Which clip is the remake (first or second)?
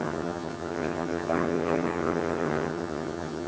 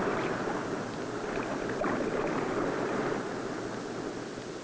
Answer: first